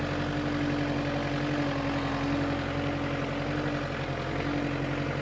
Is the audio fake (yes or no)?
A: no